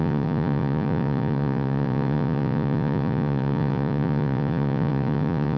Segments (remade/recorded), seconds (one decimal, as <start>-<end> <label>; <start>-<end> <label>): 0.0-5.6 remade